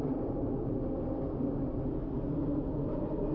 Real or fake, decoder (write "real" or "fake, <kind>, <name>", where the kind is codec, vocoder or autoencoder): fake, vocoder, BigVGAN v2